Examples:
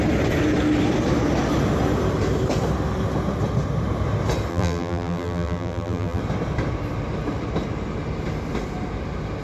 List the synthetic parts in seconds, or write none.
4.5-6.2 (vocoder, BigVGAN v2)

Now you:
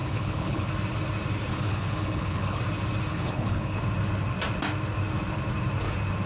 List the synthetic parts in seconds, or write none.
0.0-0.7 (codec, HILCodec); 1.5-2.6; 3.1-3.8

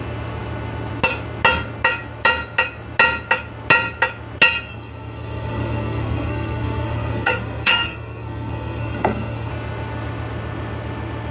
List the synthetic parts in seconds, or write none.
4.7-9.5 (codec, SNAC)

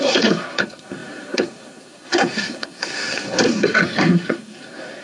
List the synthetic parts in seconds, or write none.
0.0-5.0 (codec, SNAC)

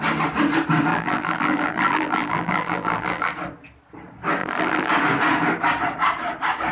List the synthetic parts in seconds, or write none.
0.9-3.3 (vocoder, BigVGAN v2); 4.4-4.9

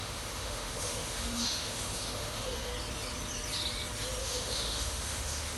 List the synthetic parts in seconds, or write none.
0.0-2.7 (autoencoder, DAC-VAE); 4.2-5.6